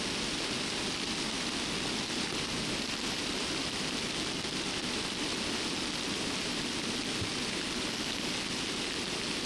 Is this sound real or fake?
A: real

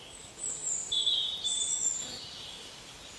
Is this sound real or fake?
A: real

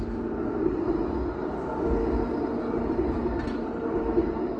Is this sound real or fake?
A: real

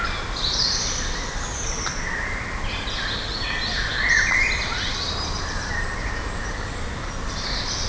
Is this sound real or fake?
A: real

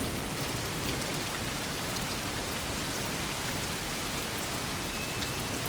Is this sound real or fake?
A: real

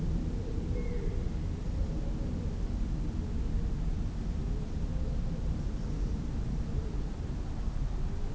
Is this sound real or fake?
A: real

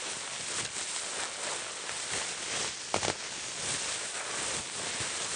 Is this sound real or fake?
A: real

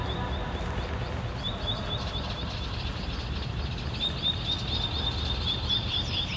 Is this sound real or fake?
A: real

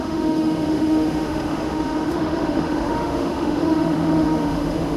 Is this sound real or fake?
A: fake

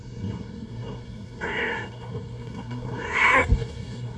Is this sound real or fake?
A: fake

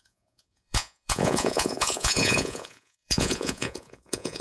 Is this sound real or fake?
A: fake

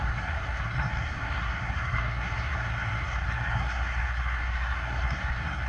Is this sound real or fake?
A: fake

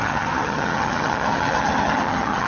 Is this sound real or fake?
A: fake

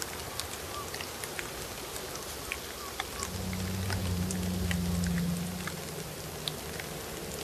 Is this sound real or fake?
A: real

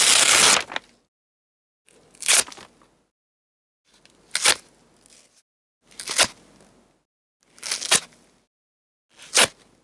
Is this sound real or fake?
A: real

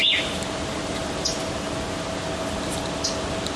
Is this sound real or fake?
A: real